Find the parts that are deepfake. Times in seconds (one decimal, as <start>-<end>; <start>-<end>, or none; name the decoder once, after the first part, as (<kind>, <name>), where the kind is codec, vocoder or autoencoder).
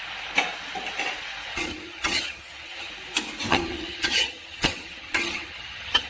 1.5-2.9 (vocoder, HiFi-GAN); 3.5-6.1